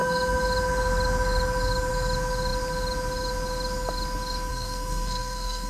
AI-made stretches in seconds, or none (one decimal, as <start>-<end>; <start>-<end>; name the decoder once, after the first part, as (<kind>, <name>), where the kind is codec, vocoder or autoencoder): 4.5-5.7 (codec, SNAC)